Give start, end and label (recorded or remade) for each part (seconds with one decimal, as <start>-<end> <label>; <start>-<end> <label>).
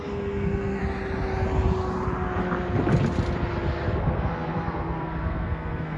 0.0-0.8 remade; 0.8-4.0 recorded; 4.0-6.0 remade